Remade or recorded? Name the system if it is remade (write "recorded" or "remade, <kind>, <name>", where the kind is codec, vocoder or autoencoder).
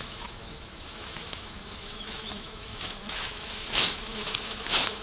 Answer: remade, autoencoder, DAC-VAE